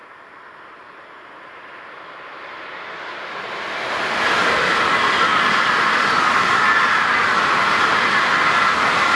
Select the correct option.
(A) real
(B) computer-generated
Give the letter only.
A